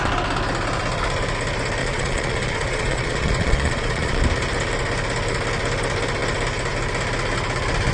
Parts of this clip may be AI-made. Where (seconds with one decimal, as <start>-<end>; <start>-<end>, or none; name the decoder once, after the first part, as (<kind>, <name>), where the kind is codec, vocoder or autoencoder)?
1.8-4.2 (vocoder, Vocos)